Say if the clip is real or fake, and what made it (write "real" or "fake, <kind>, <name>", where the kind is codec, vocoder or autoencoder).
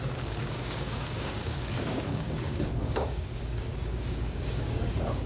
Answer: fake, codec, DAC